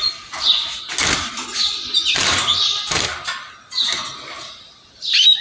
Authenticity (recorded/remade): recorded